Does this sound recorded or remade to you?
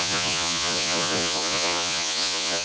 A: remade